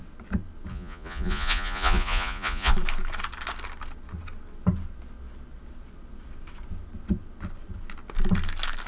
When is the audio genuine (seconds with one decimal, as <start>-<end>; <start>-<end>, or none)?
0.0-0.7; 2.7-8.9